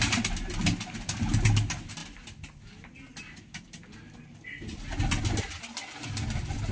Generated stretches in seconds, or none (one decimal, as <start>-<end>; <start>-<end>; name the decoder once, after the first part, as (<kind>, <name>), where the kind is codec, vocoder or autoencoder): none